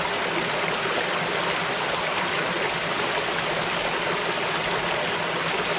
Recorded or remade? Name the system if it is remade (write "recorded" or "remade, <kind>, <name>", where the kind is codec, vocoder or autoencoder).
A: recorded